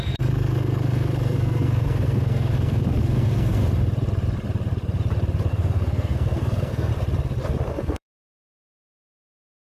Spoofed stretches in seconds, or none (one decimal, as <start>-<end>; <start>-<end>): 0.0-3.6; 5.5-6.9; 7.7-9.6